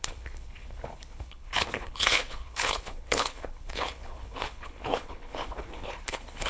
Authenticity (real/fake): fake